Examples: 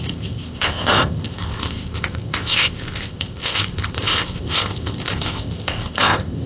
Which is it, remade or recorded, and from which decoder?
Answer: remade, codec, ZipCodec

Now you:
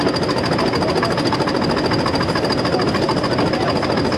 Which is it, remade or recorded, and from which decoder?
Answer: recorded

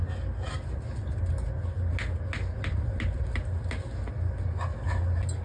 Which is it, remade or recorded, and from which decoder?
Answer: recorded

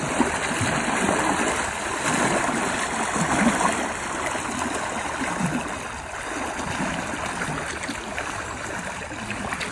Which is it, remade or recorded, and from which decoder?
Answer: recorded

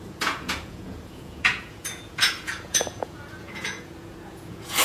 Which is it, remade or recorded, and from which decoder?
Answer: remade, vocoder, Vocos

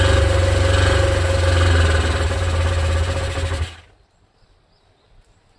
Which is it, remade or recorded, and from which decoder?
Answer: recorded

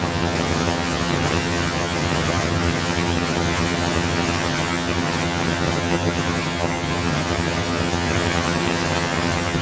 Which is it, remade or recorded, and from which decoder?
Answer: remade, vocoder, HiFi-GAN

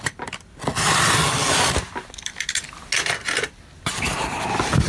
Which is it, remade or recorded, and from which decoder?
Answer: recorded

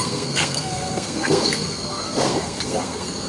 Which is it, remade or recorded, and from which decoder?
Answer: remade, codec, SNAC